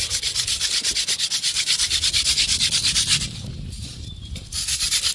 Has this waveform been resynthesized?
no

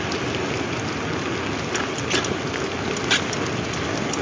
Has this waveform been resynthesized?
no